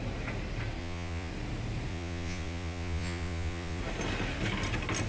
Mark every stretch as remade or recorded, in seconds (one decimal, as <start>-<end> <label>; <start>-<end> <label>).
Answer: 0.0-0.8 recorded; 0.8-1.3 remade; 1.3-1.9 recorded; 1.9-3.8 remade; 3.8-5.1 recorded